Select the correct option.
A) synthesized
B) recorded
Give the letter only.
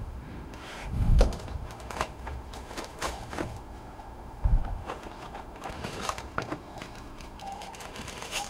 A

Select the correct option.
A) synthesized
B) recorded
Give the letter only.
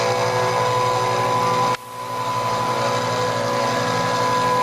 B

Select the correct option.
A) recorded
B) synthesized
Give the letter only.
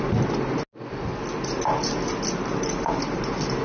A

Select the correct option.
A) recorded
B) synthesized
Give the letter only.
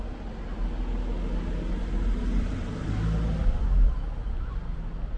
A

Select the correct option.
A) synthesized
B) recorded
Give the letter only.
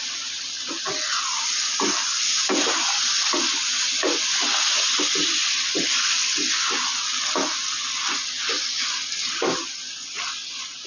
B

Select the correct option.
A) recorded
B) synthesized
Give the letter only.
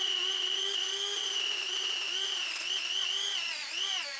A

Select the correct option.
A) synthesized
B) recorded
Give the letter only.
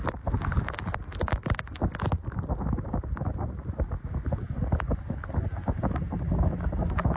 B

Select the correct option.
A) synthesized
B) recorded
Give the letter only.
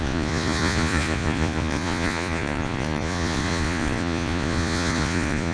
A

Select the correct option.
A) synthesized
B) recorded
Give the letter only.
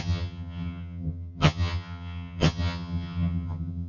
A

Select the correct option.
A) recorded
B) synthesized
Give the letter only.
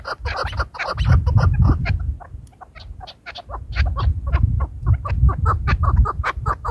A